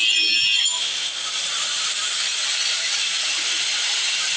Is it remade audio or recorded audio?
recorded